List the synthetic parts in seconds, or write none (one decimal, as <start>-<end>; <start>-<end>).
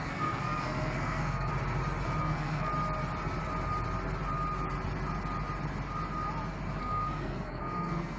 0.0-1.5; 2.2-2.7; 6.8-8.2